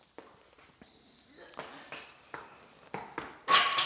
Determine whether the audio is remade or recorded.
recorded